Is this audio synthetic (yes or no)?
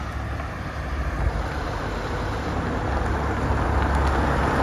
no